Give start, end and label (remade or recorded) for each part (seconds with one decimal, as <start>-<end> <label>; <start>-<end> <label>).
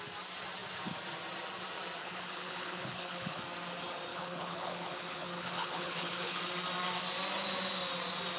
0.0-2.0 recorded; 2.0-3.4 remade; 3.4-4.1 recorded; 4.1-6.4 remade; 6.4-8.4 recorded